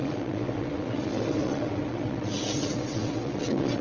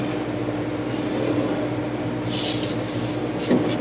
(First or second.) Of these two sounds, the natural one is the second